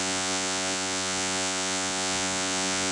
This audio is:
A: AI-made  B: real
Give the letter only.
A